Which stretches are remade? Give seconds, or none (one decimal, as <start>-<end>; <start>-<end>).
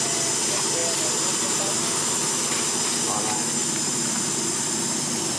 none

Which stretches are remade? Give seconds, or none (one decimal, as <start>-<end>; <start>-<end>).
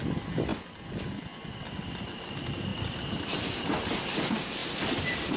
4.6-5.4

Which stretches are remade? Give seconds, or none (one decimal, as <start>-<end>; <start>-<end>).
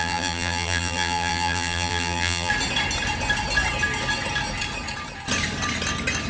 0.0-2.5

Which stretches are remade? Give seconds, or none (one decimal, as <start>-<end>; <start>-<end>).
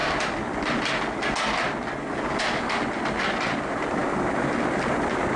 none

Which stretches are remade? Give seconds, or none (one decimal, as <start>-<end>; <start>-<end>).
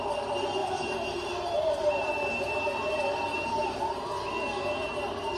0.6-3.8